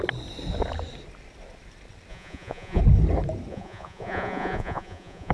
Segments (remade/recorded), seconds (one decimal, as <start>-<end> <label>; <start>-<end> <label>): 0.0-2.1 recorded; 2.1-2.8 remade; 2.8-3.5 recorded; 3.5-5.3 remade